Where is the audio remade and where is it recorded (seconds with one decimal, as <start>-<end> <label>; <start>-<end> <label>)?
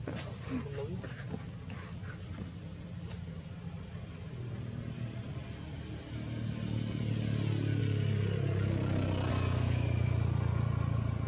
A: 0.0-11.3 recorded